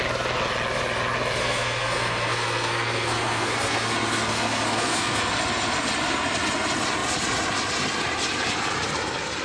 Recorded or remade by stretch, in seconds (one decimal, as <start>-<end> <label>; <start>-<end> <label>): 0.0-1.4 recorded; 1.4-5.2 remade; 5.2-9.4 recorded